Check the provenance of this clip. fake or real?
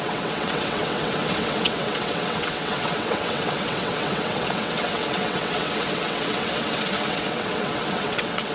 fake